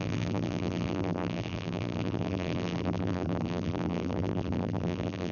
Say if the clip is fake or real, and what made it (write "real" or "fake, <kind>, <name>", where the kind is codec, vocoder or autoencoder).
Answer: fake, vocoder, BigVGAN v2